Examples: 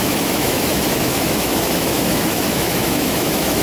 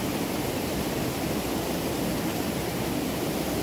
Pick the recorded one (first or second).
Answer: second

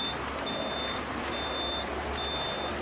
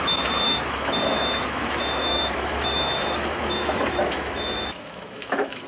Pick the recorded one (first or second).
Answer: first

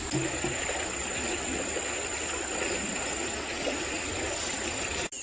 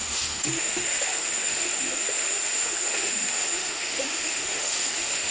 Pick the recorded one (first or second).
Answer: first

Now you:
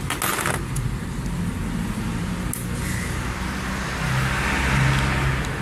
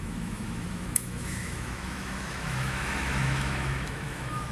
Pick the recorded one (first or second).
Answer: first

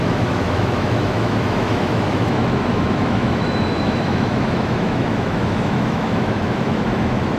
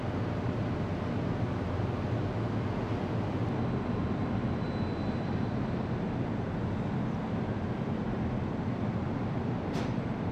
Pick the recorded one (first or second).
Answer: second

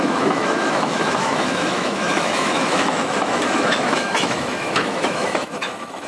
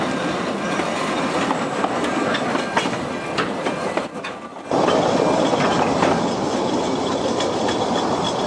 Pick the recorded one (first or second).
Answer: second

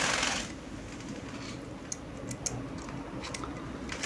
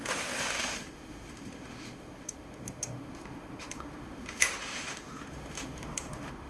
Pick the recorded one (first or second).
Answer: first